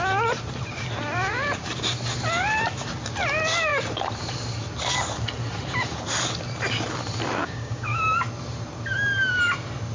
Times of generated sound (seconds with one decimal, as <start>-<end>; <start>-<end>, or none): 7.4-8.0